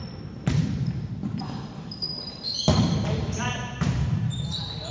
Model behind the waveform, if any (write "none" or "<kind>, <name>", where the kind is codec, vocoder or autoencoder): vocoder, BigVGAN v2